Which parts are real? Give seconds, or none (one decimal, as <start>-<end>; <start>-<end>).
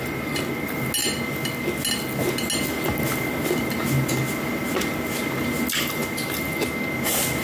0.0-6.0; 6.6-7.4